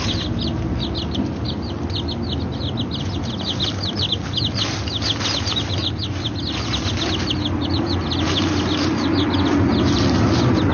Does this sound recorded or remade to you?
recorded